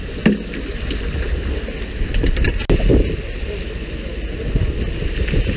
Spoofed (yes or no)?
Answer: no